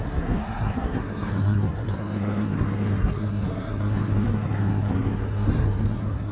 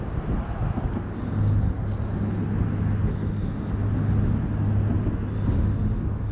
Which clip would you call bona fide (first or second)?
second